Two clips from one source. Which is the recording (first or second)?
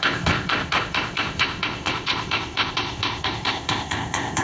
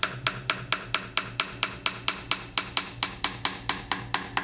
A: second